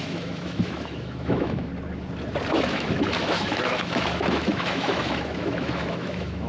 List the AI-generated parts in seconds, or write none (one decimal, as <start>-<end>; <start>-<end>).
0.0-1.7; 2.5-6.5